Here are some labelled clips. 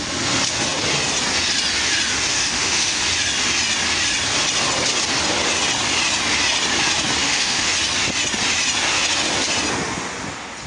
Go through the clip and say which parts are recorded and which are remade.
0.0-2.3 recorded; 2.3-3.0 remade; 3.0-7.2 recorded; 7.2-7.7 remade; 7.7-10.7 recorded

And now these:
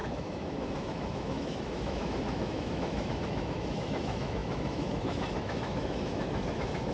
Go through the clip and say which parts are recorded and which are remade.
0.0-6.9 remade

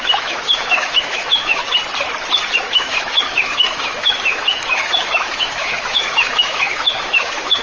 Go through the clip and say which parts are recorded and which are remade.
0.0-1.6 remade; 1.6-2.6 recorded; 2.6-7.6 remade

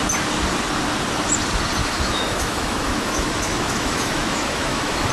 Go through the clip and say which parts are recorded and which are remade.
0.0-1.8 recorded; 1.8-5.1 remade